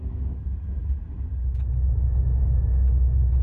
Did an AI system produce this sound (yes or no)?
no